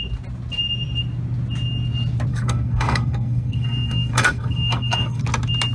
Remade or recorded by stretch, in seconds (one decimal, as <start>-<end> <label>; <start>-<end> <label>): 0.0-2.3 recorded; 2.3-5.2 remade; 5.2-5.7 recorded